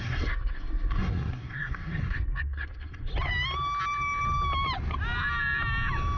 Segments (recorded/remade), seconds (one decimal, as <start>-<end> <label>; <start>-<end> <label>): 0.0-3.1 remade; 3.1-6.2 recorded